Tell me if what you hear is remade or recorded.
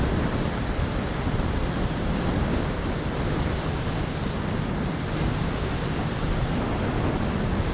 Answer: recorded